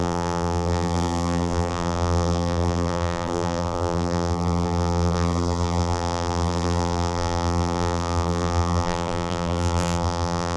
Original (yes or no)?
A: no